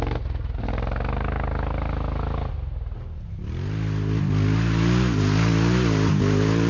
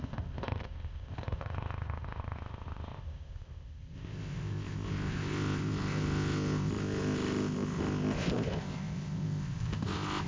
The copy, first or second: second